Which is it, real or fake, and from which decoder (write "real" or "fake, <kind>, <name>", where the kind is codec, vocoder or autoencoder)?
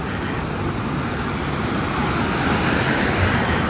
fake, vocoder, BigVGAN v2